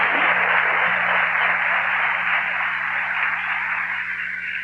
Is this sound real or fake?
real